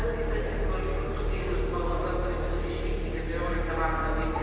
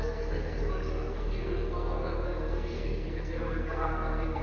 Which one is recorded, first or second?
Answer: first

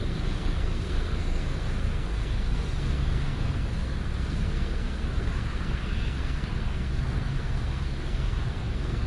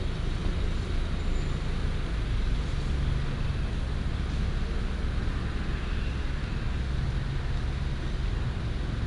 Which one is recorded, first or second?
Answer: second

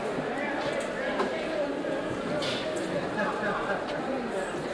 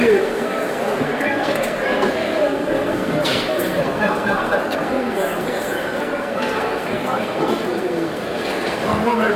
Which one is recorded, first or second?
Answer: first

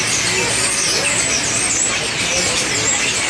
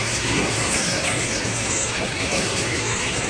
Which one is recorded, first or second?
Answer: first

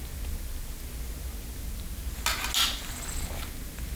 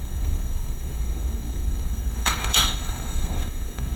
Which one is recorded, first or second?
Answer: first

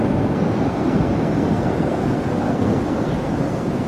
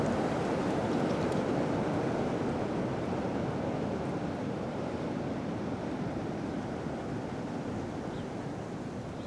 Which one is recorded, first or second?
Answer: second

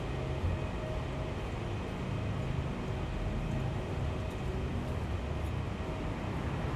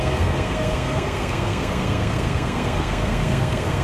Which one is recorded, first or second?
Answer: first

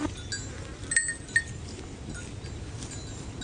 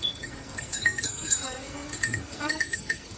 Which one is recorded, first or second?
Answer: first